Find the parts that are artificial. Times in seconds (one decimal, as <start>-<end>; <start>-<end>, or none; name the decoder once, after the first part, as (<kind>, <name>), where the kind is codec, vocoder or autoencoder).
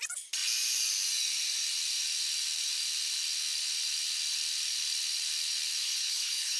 5.8-6.6 (codec, HILCodec)